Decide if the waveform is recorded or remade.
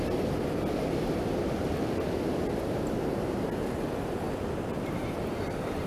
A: recorded